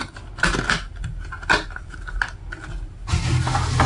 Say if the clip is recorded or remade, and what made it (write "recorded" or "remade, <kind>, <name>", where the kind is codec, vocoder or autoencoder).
recorded